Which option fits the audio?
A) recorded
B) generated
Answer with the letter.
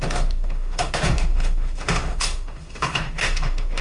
B